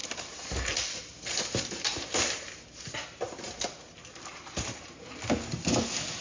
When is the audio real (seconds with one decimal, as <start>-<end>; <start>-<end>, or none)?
0.7-1.1; 3.7-4.3; 5.2-6.2